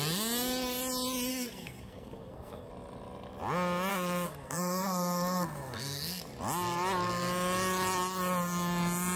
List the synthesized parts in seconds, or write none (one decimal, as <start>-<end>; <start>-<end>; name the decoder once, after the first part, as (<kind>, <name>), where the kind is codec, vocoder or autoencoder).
1.3-2.7 (codec, SNAC); 3.9-6.2